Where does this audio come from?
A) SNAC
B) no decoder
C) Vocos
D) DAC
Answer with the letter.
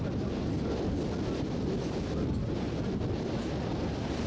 B